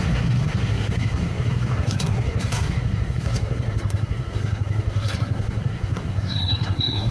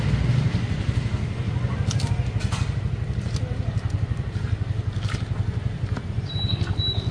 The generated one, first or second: first